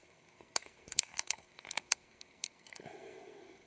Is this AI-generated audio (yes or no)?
yes